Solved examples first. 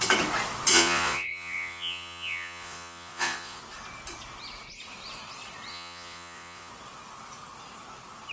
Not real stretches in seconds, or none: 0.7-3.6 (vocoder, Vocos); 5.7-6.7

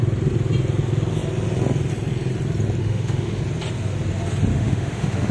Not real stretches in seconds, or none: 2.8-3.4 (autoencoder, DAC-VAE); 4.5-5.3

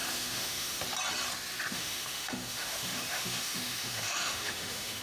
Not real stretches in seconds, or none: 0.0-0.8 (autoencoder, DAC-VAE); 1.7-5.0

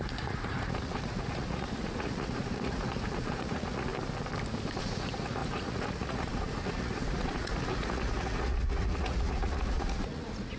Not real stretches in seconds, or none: 0.0-3.9 (vocoder, Vocos); 4.8-10.6